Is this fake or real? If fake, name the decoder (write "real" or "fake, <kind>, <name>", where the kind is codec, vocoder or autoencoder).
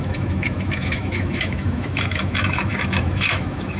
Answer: fake, autoencoder, DAC-VAE